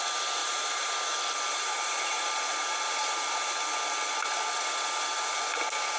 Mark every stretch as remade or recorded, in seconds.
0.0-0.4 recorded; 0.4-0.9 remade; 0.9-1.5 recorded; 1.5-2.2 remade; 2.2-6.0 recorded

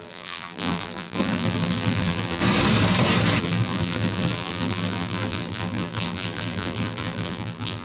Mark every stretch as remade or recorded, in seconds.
0.0-2.4 remade; 2.4-3.4 recorded; 3.4-7.8 remade

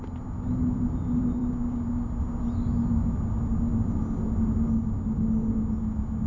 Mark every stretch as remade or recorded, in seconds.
0.0-6.3 recorded

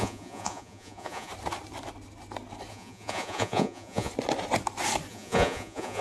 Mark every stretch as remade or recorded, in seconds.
0.0-1.3 remade; 1.3-2.7 recorded; 2.7-4.1 remade; 4.1-5.1 recorded; 5.1-6.0 remade